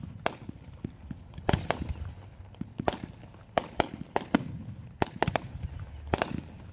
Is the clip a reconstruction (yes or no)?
no